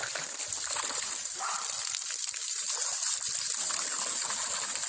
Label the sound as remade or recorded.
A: recorded